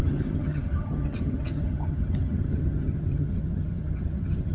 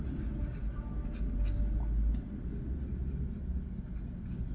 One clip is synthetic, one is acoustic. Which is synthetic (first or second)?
first